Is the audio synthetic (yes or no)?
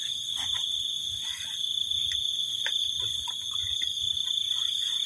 no